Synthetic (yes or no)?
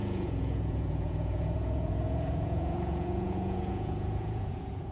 yes